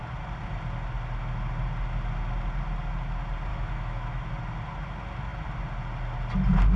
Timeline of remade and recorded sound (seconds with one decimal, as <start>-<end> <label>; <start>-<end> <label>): 0.0-3.5 recorded; 3.5-4.3 remade; 4.3-6.8 recorded